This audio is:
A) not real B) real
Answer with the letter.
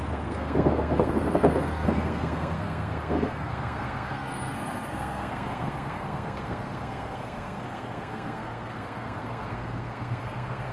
A